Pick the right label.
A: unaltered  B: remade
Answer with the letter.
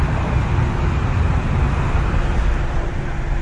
A